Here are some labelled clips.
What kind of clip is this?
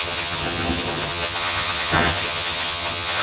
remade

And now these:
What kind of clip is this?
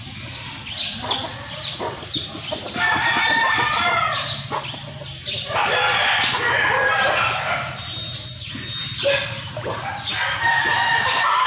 recorded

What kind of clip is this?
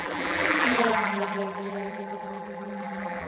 remade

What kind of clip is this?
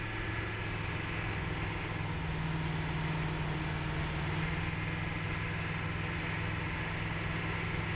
recorded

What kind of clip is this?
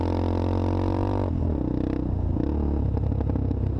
recorded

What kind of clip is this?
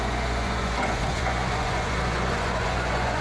remade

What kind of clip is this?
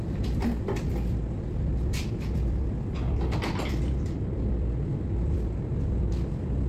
recorded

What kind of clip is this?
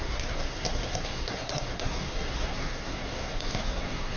remade